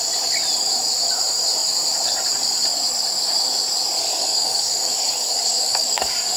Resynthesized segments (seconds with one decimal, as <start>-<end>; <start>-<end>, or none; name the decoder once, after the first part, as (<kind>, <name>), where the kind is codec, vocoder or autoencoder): 4.1-6.4 (codec, DAC)